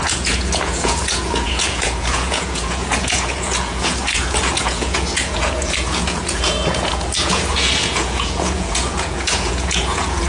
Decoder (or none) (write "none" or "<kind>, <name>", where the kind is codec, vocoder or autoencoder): vocoder, Vocos